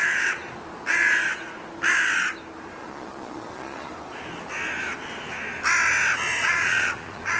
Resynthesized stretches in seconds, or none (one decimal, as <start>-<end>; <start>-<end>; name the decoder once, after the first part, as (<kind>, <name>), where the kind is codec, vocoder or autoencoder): 2.8-3.9 (vocoder, Vocos); 6.4-7.4